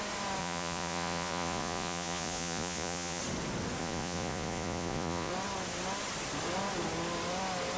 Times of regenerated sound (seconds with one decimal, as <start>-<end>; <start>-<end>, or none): 0.4-3.2; 3.8-5.3